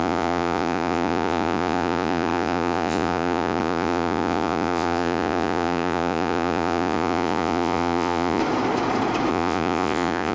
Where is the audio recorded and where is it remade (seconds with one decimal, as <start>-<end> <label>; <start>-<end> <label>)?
0.0-8.4 remade; 8.4-9.3 recorded; 9.3-10.3 remade